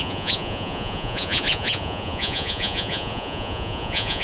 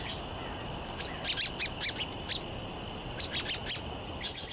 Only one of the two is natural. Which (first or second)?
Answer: second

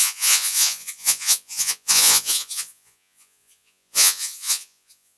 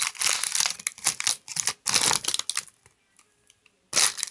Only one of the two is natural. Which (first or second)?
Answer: second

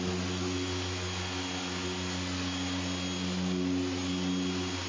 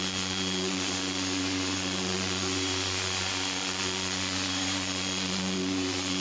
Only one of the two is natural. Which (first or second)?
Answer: first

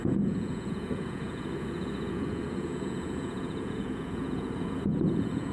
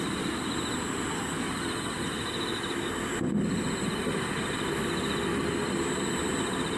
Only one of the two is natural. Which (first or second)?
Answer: second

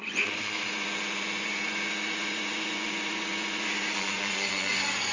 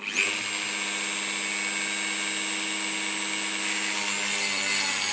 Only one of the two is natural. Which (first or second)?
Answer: second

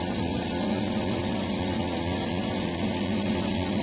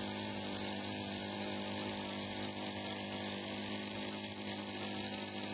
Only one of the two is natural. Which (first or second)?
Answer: second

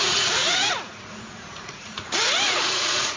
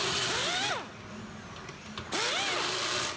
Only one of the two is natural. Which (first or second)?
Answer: second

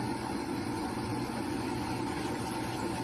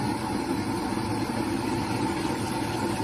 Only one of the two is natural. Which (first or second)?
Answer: second